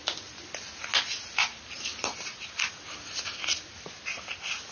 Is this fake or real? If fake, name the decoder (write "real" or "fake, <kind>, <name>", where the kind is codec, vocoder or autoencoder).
real